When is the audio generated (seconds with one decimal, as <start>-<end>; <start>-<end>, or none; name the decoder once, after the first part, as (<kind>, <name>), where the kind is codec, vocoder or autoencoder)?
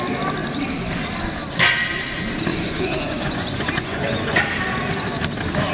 2.5-4.4 (vocoder, Vocos)